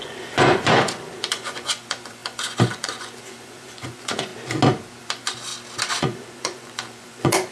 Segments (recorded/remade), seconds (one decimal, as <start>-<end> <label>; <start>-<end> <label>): 0.0-4.3 remade; 4.3-5.0 recorded; 5.0-5.5 remade; 5.5-6.0 recorded; 6.0-7.5 remade